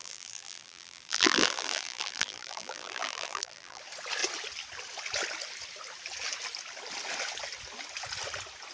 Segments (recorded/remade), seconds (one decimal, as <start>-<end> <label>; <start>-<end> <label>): 0.0-3.8 remade; 3.8-8.7 recorded